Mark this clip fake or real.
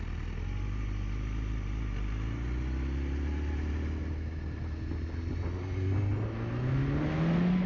real